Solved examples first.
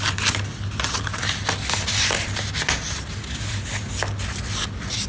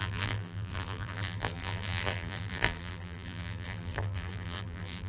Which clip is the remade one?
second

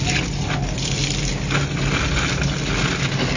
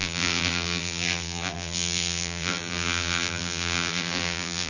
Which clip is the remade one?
second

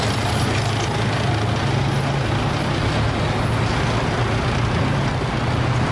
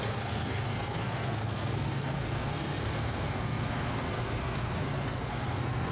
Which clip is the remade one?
second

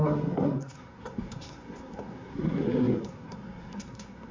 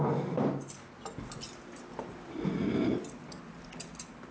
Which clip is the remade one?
first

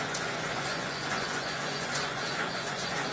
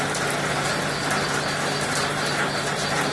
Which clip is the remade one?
first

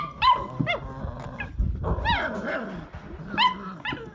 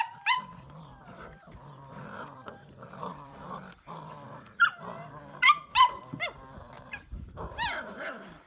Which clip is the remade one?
second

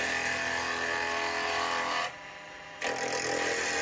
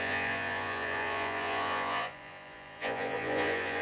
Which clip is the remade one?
second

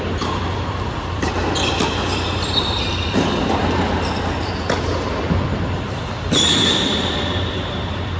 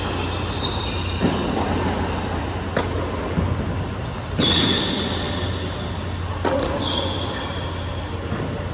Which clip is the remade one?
first